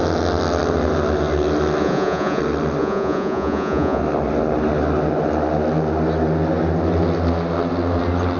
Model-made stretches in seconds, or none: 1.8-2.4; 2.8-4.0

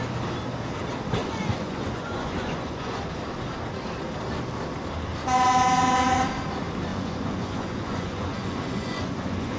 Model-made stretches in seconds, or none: 1.2-3.0; 6.9-9.6

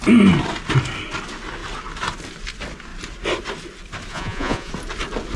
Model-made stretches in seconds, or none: 4.1-4.7